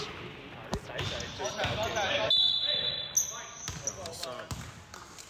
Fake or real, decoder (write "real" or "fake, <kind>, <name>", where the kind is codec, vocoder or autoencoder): real